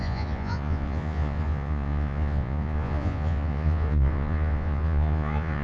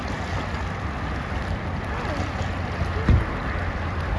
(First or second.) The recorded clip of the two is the second